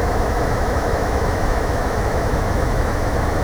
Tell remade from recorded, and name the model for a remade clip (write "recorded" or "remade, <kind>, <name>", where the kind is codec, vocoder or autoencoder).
remade, autoencoder, DAC-VAE